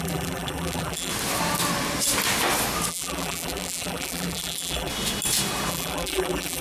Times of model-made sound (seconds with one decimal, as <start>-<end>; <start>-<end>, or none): 0.0-1.1; 2.9-4.9; 5.7-6.6

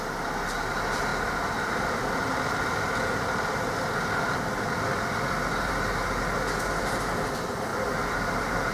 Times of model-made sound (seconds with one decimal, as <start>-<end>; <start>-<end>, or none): none

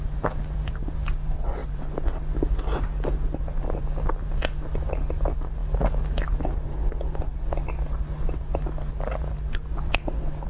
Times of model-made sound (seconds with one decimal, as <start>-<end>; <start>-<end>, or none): none

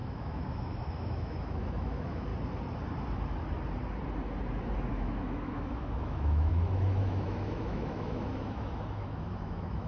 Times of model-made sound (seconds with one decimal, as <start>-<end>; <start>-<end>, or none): 0.0-2.3; 4.9-9.9

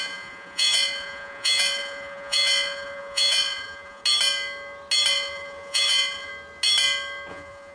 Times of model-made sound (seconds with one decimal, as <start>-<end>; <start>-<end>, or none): 0.0-4.0; 5.1-6.3; 7.3-7.7

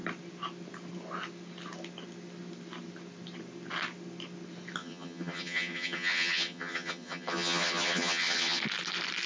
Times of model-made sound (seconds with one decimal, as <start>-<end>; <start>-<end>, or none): 4.8-8.6